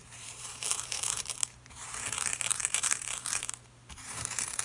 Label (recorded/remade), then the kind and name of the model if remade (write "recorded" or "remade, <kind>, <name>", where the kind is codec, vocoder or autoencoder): remade, vocoder, BigVGAN v2